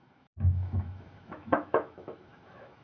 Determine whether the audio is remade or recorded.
remade